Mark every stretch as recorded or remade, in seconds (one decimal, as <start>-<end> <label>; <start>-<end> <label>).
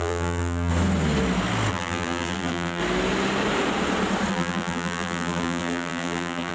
0.0-0.7 remade; 0.7-1.7 recorded; 1.7-2.8 remade; 2.8-4.3 recorded; 4.3-6.5 remade